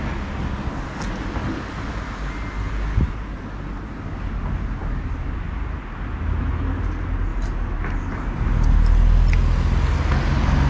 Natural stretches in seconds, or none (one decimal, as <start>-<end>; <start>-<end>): 0.0-10.7